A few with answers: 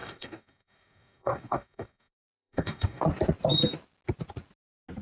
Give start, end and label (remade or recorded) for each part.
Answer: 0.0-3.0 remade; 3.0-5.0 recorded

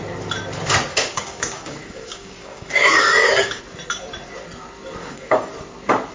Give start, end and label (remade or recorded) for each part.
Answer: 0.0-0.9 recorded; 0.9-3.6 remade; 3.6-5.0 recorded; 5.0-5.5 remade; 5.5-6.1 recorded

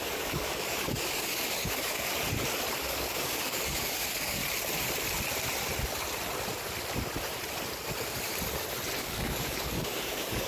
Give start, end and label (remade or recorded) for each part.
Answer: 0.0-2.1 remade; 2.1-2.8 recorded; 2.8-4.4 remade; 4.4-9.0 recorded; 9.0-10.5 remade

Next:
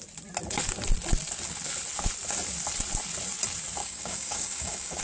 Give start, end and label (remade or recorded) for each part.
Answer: 0.0-3.8 recorded; 3.8-5.0 remade

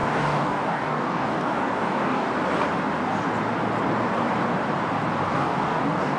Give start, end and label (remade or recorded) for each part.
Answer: 0.0-2.3 remade; 2.3-5.3 recorded; 5.3-6.2 remade

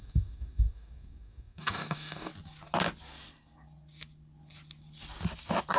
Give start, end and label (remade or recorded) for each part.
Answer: 0.0-2.3 remade; 2.3-5.8 recorded

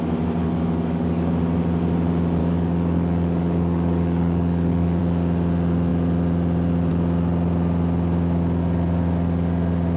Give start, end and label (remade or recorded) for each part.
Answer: 0.0-0.4 recorded; 0.4-1.3 remade; 1.3-2.4 recorded; 2.4-5.0 remade; 5.0-10.0 recorded

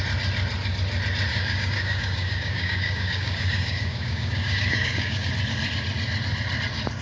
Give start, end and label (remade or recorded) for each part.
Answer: 0.0-1.3 recorded; 1.3-5.3 remade; 5.3-7.0 recorded